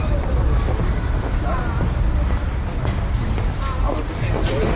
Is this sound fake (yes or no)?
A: no